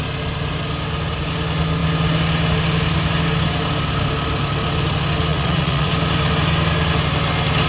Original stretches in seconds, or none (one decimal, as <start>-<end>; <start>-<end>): 0.0-5.3; 5.9-7.7